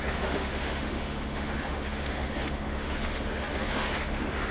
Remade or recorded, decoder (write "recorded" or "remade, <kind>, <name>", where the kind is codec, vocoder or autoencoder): remade, autoencoder, DAC-VAE